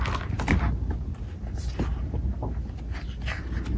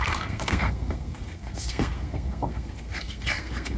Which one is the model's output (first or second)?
second